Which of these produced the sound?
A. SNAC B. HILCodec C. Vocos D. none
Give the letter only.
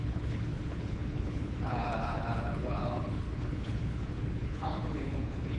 B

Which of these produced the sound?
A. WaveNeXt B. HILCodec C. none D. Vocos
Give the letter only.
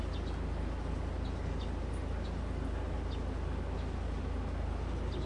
C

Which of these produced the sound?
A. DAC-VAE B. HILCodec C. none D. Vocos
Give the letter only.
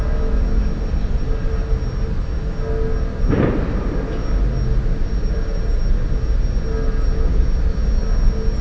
C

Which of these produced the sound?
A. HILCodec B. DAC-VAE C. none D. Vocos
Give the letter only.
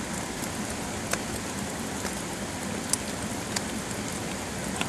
C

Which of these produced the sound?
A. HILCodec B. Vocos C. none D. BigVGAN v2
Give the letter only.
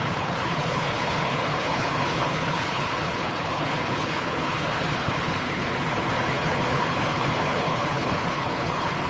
A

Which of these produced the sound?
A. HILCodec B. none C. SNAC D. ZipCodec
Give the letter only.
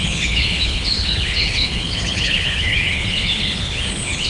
A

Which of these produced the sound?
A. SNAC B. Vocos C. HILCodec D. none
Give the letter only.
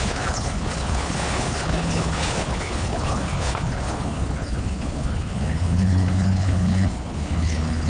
C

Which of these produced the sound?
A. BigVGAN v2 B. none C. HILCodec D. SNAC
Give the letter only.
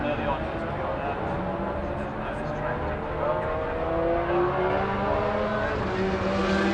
B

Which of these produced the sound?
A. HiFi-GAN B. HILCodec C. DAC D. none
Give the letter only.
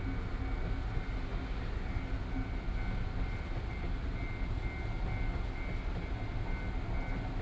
D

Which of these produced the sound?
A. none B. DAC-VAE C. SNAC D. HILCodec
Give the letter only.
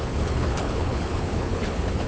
D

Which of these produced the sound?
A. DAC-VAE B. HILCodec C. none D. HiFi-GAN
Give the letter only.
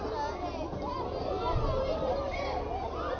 C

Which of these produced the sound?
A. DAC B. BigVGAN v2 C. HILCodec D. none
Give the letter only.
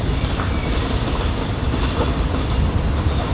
D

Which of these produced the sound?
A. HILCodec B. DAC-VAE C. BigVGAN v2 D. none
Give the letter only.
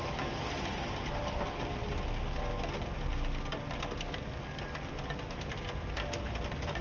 D